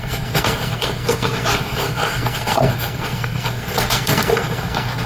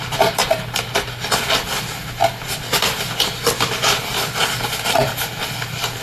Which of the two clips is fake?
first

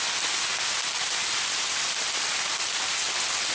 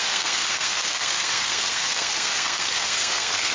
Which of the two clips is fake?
second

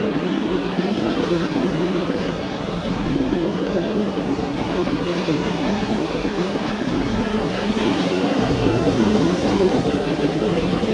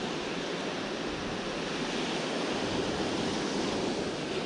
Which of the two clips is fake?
first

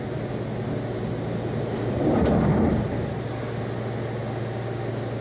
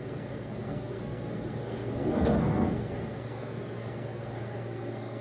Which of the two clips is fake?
second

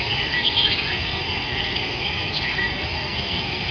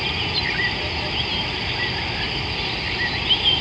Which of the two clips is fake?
first